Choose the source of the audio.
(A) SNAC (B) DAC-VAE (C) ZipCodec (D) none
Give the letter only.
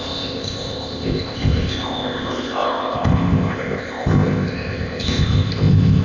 C